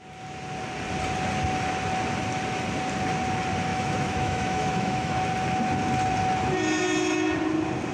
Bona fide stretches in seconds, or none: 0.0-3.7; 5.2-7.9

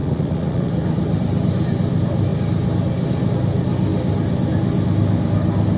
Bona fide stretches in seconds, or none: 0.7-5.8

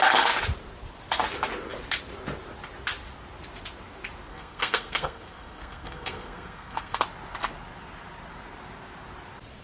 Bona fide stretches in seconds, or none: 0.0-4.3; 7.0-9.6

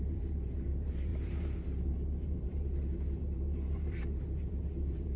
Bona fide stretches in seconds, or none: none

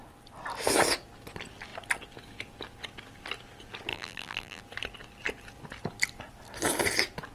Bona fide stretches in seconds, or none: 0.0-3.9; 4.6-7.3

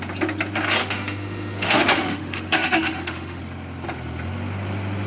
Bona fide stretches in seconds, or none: 0.0-0.8; 3.4-5.1